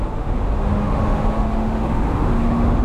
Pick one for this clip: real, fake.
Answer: fake